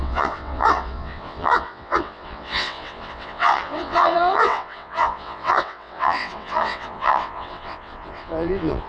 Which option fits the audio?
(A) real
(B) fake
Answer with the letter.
B